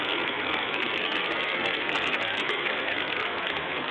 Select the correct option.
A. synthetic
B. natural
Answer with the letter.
A